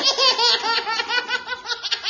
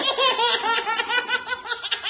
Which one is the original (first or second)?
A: first